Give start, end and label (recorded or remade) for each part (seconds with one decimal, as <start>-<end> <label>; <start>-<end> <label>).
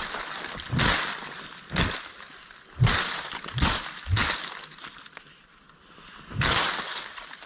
0.0-7.5 recorded